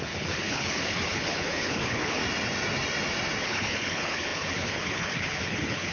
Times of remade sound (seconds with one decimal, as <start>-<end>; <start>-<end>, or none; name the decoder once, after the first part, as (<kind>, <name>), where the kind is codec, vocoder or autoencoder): 0.0-2.2 (codec, HILCodec); 3.4-5.9